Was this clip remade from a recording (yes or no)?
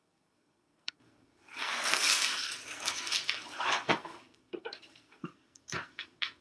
yes